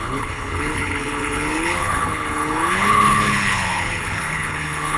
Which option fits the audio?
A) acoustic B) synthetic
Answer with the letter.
B